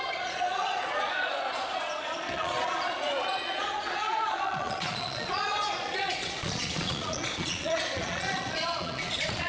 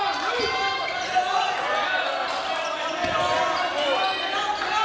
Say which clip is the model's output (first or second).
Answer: first